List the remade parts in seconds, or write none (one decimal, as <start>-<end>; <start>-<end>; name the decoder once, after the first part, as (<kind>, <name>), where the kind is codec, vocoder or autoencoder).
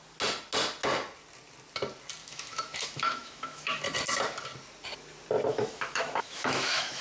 2.2-3.8 (autoencoder, DAC-VAE); 5.5-7.0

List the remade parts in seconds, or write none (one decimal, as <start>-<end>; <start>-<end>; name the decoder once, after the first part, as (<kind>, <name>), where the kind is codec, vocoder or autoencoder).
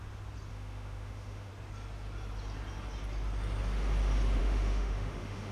0.5-1.5 (autoencoder, DAC-VAE); 4.4-5.5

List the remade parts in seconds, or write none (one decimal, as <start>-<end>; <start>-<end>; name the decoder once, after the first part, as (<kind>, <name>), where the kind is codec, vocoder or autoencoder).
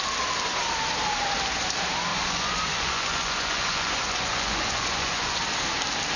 2.1-5.4 (vocoder, Vocos)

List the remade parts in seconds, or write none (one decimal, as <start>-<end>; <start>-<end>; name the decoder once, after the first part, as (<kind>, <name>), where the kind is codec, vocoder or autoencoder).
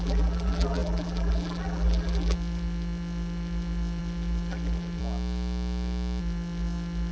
0.0-5.0 (vocoder, BigVGAN v2); 6.2-7.1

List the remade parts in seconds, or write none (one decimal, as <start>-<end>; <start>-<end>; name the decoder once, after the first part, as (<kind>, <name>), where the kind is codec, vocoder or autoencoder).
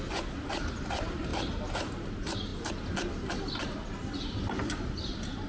none